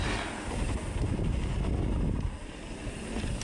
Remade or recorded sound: recorded